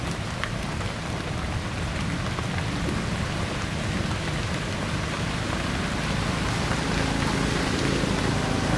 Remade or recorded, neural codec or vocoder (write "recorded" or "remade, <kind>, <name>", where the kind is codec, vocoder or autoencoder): recorded